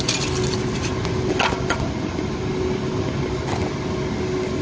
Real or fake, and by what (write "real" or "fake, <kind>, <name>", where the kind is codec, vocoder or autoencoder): real